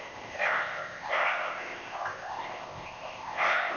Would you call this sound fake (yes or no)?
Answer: yes